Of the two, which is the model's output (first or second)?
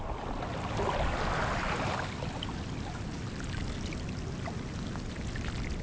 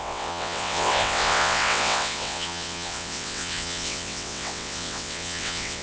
second